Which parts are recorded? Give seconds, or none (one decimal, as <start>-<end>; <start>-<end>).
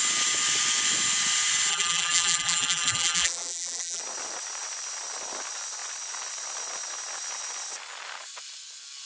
0.0-1.7; 4.0-9.1